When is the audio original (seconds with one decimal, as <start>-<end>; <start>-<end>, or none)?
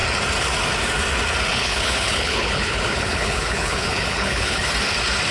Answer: 0.0-1.5; 4.7-5.3